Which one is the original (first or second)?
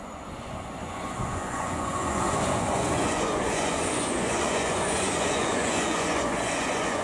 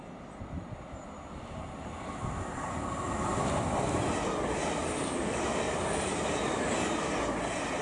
second